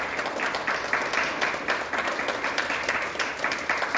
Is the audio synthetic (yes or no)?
no